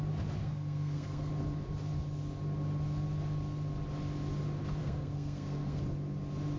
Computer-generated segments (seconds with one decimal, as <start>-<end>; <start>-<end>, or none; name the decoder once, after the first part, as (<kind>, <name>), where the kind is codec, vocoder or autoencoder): 0.4-1.3 (codec, SNAC); 4.8-5.8